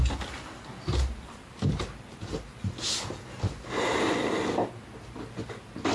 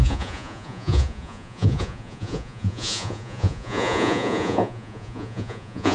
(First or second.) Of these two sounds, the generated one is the second